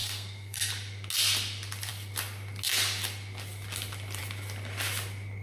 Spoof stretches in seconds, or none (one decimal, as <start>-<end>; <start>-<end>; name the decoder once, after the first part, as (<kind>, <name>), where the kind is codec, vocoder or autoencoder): 0.0-0.7 (codec, SNAC)